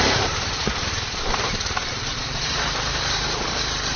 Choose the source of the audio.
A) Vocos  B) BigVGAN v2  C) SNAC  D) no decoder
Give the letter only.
B